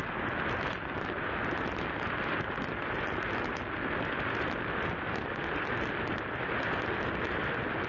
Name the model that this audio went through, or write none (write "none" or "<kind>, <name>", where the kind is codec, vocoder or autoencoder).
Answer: none